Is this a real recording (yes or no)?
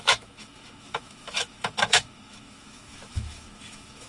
no